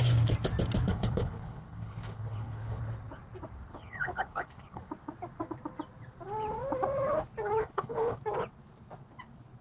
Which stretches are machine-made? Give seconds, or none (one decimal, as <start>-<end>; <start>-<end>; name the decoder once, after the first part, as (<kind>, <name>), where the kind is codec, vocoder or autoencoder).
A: 0.9-2.8 (codec, HILCodec); 3.7-4.9; 7.6-8.2